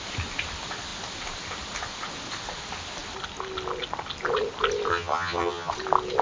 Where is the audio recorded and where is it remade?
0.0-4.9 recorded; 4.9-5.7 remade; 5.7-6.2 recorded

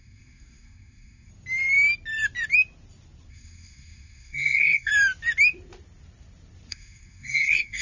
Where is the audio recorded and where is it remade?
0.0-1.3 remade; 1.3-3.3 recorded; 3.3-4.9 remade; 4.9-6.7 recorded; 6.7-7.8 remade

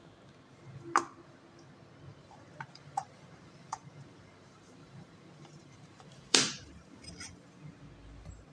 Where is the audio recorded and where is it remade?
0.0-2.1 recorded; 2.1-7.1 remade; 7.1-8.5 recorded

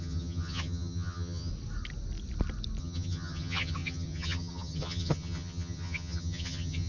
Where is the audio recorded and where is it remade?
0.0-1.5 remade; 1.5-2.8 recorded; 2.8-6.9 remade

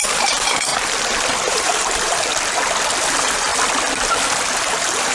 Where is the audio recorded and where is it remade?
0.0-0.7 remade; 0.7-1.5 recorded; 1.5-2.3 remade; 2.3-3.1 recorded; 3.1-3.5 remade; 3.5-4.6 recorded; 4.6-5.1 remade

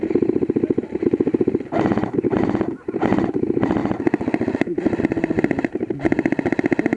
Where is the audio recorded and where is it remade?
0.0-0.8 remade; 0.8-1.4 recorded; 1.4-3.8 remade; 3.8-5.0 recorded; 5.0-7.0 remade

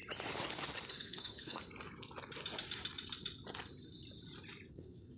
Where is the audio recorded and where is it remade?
0.0-0.9 recorded; 0.9-1.6 remade; 1.6-4.7 recorded; 4.7-5.2 remade